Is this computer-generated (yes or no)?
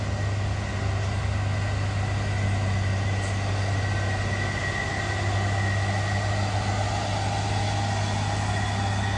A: no